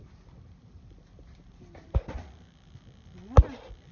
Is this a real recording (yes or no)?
yes